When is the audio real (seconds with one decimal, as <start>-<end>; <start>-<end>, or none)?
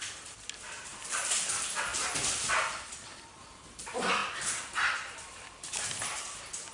none